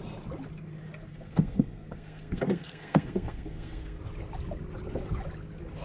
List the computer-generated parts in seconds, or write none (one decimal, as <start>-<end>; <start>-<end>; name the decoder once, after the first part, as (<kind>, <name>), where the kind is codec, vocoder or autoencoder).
1.1-4.0 (codec, SNAC)